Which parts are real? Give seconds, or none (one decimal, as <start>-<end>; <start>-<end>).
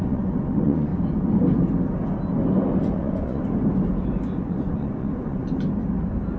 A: 0.9-2.8; 3.4-4.4; 5.4-6.4